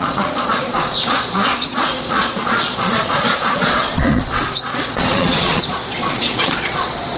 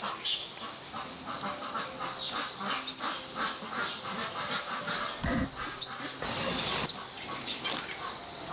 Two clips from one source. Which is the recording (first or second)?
second